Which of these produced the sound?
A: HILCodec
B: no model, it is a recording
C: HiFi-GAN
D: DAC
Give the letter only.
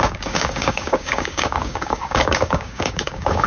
D